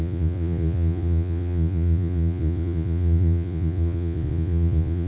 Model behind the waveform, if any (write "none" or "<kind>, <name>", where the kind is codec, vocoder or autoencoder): vocoder, Vocos